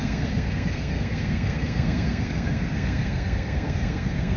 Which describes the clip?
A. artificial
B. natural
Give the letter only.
A